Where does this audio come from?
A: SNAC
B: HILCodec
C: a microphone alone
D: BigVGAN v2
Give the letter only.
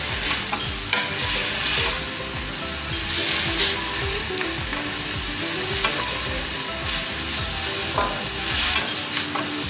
C